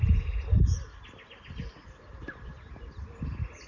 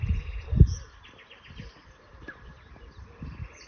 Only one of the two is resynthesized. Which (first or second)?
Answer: second